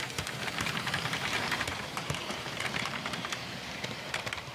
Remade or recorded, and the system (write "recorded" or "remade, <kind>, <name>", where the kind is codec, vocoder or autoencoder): remade, vocoder, BigVGAN v2